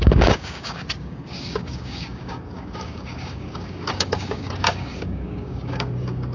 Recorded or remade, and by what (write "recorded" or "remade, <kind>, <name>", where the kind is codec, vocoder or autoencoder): remade, codec, DAC